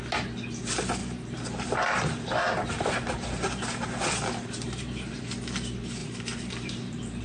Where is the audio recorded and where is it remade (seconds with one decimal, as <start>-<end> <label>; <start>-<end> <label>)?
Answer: 0.0-1.0 recorded; 1.0-5.2 remade; 5.2-6.0 recorded; 6.0-7.2 remade